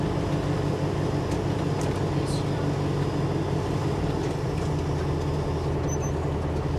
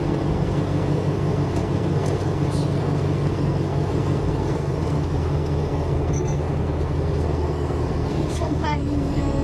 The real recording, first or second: first